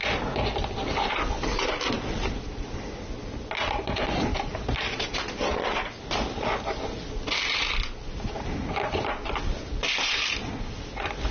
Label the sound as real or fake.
real